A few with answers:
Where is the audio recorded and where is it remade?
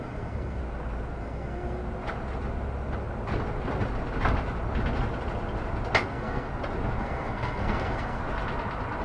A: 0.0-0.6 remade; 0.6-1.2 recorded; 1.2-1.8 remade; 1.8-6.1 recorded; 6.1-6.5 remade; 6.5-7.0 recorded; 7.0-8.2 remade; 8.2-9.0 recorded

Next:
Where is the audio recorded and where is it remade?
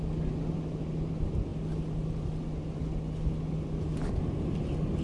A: 0.0-5.0 recorded